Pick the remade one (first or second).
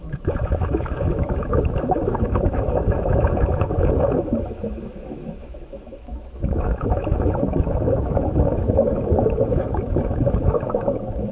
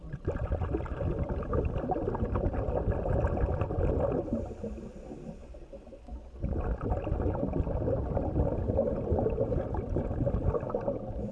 first